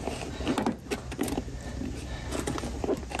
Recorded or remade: recorded